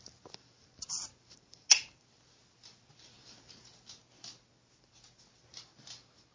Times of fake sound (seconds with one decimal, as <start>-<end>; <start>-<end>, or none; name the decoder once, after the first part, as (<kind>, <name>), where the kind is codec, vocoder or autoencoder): none